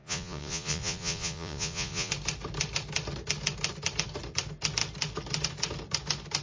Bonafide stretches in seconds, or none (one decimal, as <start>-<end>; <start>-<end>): 2.1-6.4